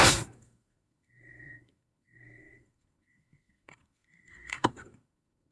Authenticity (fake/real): fake